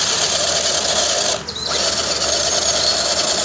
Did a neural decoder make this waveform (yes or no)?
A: no